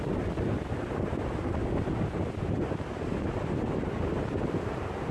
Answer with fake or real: real